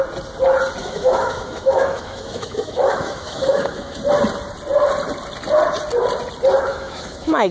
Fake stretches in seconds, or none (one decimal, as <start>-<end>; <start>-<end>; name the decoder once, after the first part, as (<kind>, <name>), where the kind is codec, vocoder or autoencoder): 0.8-4.0 (autoencoder, DAC-VAE); 6.7-7.5